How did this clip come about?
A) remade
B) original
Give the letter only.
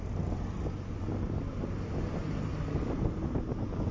B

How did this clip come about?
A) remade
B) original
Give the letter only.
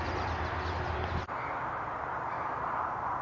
B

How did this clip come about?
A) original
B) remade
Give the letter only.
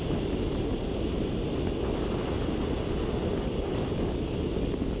A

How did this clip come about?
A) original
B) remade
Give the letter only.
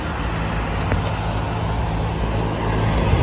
A